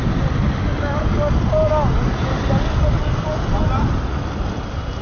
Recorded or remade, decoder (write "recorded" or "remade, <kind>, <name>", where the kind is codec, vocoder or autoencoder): recorded